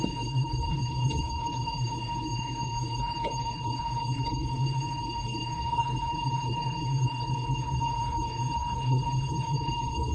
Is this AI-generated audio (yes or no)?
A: yes